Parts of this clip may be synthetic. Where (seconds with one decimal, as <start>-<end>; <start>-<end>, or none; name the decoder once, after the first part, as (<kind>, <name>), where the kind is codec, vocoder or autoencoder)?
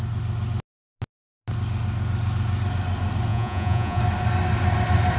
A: 3.3-4.0 (vocoder, Vocos)